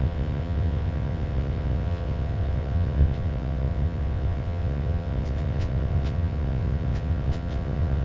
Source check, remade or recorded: remade